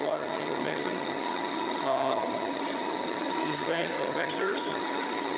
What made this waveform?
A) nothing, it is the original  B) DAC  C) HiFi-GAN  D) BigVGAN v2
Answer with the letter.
C